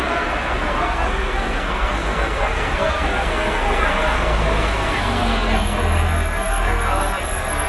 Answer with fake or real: fake